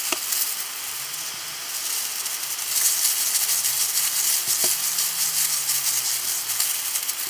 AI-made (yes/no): no